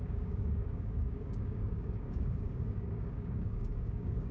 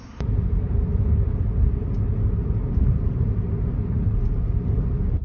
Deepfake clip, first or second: first